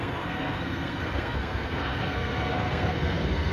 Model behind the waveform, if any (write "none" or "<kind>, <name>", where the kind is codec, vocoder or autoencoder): codec, SNAC